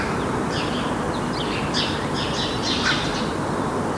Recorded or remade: recorded